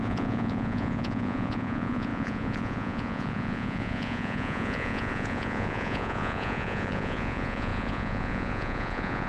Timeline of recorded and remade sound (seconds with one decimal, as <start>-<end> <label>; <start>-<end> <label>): 0.0-9.3 remade